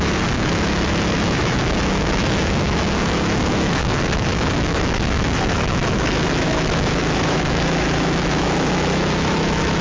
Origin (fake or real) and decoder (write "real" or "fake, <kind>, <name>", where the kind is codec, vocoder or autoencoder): fake, autoencoder, DAC-VAE